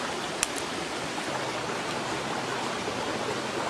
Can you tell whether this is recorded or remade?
recorded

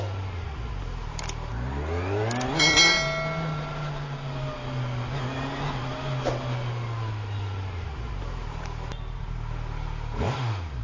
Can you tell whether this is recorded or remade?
recorded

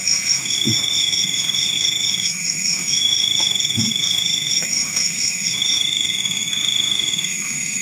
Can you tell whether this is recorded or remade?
remade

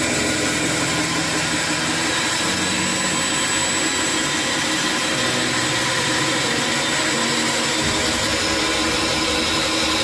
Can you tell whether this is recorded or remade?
recorded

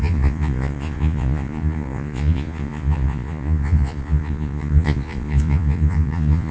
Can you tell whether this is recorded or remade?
remade